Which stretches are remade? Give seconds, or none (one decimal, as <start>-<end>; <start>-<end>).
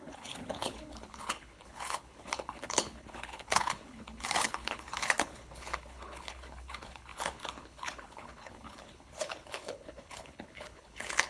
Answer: 0.0-11.3